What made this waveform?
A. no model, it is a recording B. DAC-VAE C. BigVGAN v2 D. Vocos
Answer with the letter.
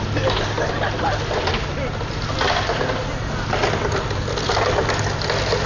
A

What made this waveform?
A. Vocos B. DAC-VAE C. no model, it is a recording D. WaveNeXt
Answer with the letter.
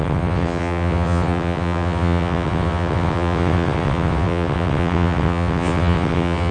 D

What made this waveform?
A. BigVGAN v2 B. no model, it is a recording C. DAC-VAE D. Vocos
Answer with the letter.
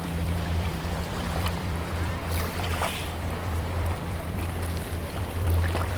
A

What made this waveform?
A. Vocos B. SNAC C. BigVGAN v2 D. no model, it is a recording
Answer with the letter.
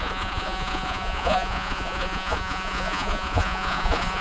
A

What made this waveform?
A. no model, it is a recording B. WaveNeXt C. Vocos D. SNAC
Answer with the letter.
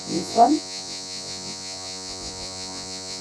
C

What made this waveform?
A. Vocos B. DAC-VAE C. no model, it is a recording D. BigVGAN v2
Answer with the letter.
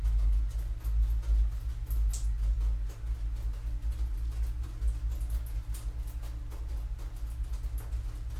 C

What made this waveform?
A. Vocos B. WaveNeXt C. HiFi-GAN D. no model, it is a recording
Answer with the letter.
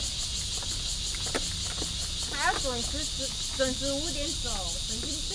D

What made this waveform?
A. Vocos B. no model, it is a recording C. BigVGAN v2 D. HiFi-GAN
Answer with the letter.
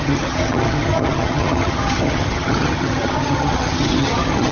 D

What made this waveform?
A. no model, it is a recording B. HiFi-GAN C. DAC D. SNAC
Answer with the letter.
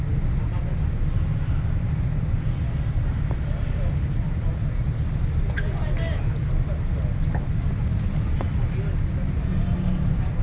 A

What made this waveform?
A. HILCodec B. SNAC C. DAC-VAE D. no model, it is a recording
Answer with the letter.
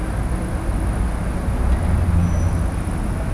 D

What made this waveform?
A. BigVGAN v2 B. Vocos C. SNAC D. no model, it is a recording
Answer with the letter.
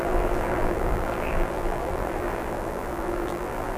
A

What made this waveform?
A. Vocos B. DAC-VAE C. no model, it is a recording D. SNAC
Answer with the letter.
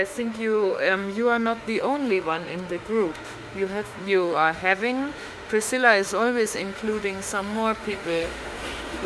B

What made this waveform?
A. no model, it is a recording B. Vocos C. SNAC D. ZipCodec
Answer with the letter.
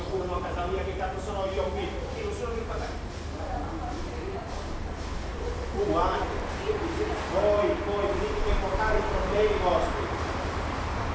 A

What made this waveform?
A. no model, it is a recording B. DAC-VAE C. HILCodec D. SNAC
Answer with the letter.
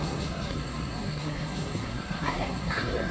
D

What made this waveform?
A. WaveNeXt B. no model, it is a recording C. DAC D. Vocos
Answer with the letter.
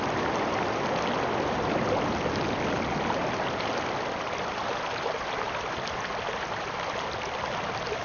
B